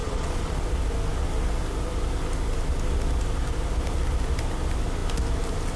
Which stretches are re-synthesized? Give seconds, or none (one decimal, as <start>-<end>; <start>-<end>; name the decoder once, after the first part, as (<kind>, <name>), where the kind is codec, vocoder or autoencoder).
0.0-0.6 (vocoder, Vocos)